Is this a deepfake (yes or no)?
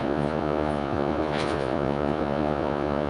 yes